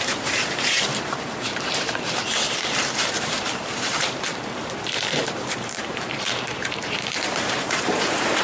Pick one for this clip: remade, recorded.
remade